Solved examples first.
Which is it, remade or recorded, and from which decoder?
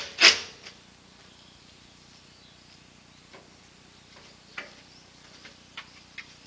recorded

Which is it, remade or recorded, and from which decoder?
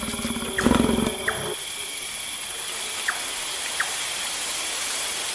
recorded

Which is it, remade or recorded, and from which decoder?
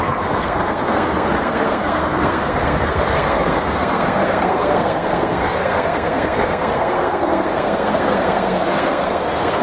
remade, codec, SNAC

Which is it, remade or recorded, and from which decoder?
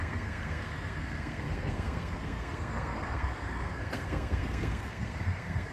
remade, codec, SNAC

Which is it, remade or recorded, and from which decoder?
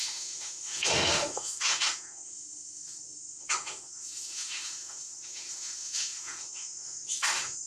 remade, autoencoder, DAC-VAE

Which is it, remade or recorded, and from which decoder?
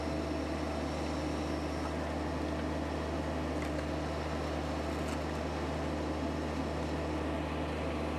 recorded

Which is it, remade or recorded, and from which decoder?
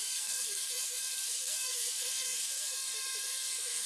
remade, codec, SNAC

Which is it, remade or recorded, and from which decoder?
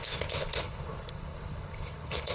remade, codec, HILCodec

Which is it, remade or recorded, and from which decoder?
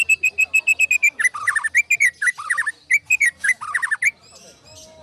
recorded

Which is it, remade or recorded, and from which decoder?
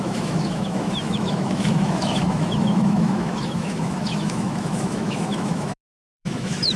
remade, autoencoder, DAC-VAE